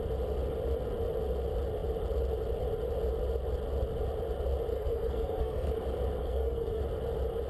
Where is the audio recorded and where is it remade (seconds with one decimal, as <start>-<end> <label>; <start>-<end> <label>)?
0.0-4.7 recorded; 4.7-5.7 remade; 5.7-6.2 recorded; 6.2-6.8 remade; 6.8-7.5 recorded